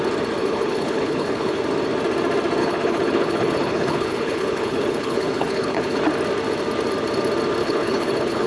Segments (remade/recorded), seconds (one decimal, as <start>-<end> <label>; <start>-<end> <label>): 0.0-0.4 recorded; 0.4-1.6 remade; 1.6-2.6 recorded; 2.6-6.0 remade; 6.0-7.6 recorded; 7.6-8.5 remade